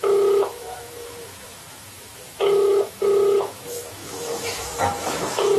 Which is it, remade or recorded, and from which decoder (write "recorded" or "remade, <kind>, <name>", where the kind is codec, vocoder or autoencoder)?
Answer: remade, autoencoder, DAC-VAE